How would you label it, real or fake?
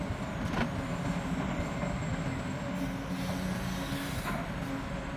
real